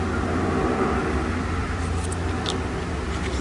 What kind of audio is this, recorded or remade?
recorded